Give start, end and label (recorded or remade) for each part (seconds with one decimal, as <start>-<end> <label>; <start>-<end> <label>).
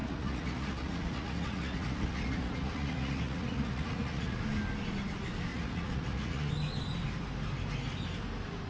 0.0-4.4 remade; 4.4-5.5 recorded; 5.5-6.5 remade; 6.5-8.7 recorded